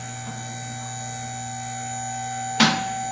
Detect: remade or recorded recorded